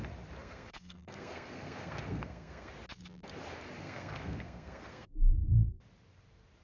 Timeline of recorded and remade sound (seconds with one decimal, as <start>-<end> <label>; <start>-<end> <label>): 0.0-0.4 recorded; 0.4-2.7 remade; 2.7-3.8 recorded; 3.8-5.8 remade; 5.8-6.6 recorded